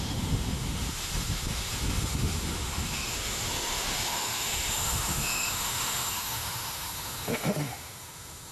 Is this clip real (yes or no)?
no